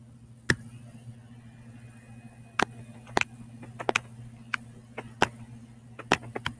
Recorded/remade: recorded